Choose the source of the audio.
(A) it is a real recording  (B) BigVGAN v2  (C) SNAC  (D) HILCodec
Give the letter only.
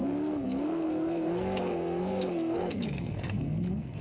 C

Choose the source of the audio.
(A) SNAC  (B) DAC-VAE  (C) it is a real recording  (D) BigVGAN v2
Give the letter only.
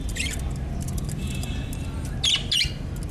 C